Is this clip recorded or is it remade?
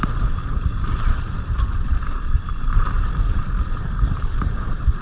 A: remade